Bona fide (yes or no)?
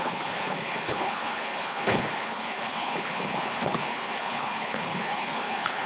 no